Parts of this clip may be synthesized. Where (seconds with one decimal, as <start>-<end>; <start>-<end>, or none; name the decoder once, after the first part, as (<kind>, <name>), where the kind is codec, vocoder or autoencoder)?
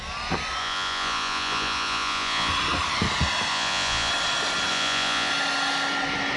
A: 0.6-2.5 (vocoder, Vocos); 3.5-4.1; 4.7-5.3